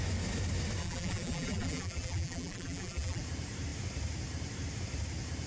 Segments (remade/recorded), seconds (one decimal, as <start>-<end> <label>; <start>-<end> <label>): 0.0-0.8 recorded; 0.8-3.2 remade; 3.2-5.5 recorded